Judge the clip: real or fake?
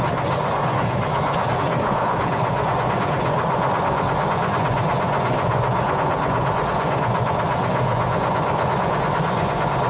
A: fake